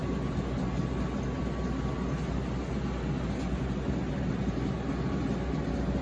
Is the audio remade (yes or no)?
no